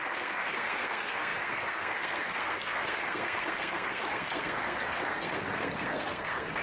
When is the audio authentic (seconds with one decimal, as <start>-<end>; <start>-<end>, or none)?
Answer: none